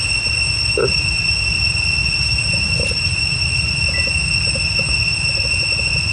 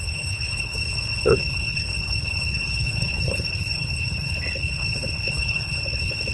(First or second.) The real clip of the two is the first